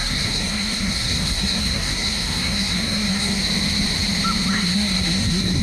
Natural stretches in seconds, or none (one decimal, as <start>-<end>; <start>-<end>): 3.4-4.5